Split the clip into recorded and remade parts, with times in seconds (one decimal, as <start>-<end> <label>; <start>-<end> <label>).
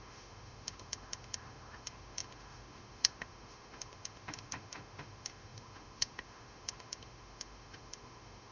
0.0-8.5 remade